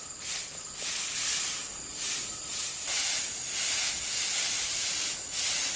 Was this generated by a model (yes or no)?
no